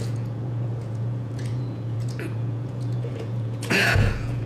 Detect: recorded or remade remade